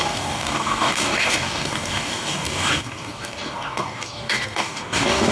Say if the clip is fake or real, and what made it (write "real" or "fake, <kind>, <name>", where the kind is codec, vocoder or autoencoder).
fake, codec, DAC